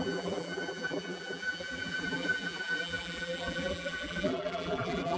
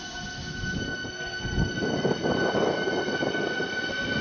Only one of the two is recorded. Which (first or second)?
second